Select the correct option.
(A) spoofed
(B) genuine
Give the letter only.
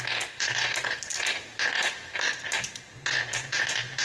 B